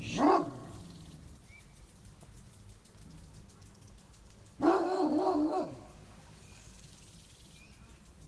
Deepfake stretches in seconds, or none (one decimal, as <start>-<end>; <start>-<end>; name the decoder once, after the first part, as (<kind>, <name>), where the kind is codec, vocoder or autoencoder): 3.1-7.0 (codec, DAC)